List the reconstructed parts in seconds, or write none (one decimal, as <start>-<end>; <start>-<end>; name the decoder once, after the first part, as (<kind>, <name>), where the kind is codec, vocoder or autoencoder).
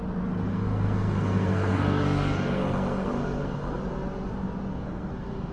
0.5-3.8 (codec, SNAC); 4.7-5.5